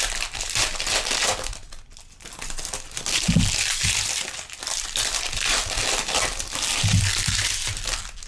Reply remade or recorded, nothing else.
recorded